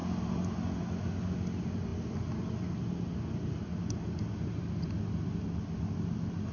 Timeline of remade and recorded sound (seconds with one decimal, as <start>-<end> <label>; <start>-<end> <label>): 0.0-6.5 recorded